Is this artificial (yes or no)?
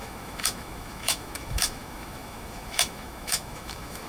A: yes